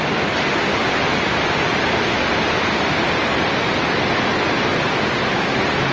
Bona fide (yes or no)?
yes